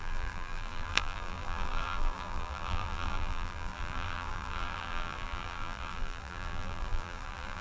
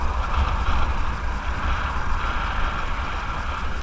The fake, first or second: first